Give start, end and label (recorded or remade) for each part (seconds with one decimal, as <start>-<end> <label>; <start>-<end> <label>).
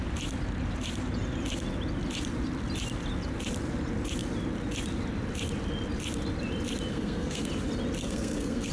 0.0-6.9 recorded; 6.9-7.5 remade; 7.5-8.0 recorded; 8.0-8.7 remade